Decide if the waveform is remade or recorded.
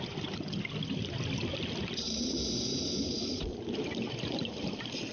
recorded